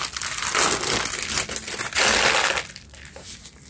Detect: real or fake real